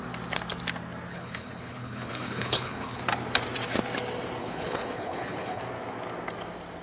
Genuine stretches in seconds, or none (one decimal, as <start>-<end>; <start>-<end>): 0.0-1.1; 3.0-4.4; 5.6-6.8